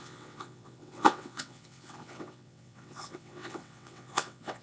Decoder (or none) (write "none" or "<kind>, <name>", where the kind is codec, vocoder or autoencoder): vocoder, WaveNeXt